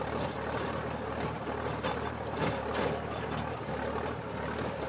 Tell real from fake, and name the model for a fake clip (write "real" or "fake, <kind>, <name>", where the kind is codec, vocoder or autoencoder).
real